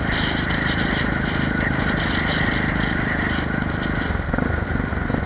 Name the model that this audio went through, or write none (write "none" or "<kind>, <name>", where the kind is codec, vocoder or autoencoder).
none